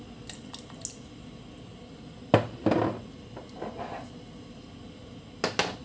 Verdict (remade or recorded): recorded